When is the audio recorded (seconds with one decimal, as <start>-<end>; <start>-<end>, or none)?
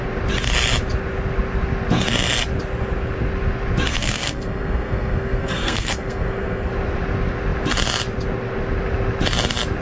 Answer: 0.0-3.9; 6.7-9.8